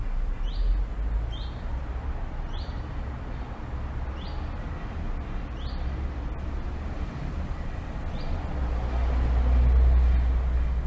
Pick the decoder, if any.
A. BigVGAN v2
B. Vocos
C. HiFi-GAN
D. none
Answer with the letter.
D